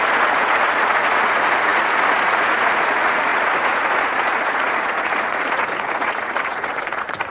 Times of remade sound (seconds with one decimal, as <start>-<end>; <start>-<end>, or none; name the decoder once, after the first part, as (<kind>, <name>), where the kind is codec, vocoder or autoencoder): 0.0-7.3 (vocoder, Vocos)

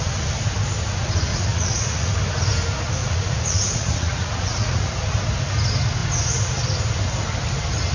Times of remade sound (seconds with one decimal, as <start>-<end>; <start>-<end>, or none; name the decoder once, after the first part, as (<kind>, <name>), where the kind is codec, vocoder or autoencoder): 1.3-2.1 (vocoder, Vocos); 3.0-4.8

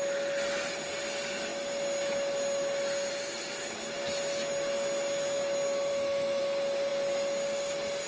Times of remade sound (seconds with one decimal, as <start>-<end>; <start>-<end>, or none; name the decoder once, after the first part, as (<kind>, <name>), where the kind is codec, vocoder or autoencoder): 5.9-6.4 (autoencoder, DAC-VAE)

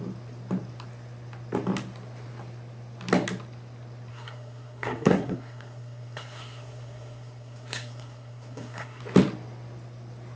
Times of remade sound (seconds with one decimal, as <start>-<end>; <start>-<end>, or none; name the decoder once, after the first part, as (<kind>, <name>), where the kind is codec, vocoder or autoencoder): 4.1-9.0 (codec, SNAC)

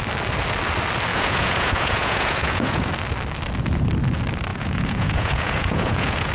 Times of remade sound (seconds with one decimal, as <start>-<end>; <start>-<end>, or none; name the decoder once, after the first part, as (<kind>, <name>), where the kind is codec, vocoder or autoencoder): 1.1-2.9 (vocoder, Vocos); 4.5-6.3

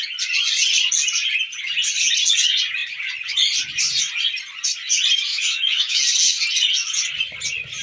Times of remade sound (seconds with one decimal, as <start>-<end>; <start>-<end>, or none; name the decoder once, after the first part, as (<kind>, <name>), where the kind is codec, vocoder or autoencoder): 5.3-6.0 (autoencoder, DAC-VAE)

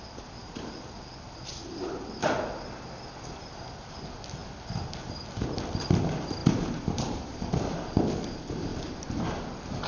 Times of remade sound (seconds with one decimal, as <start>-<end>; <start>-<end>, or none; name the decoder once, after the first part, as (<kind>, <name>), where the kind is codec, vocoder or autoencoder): 6.4-8.1 (vocoder, BigVGAN v2); 8.7-9.2